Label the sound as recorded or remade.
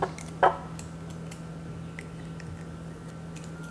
recorded